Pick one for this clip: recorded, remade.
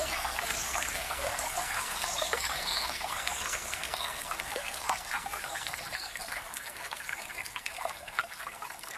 remade